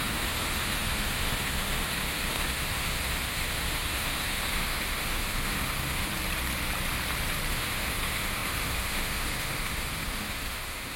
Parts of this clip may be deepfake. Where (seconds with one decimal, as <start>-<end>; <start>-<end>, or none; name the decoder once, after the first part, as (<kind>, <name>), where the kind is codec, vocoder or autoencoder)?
0.0-6.1 (autoencoder, DAC-VAE); 7.5-11.0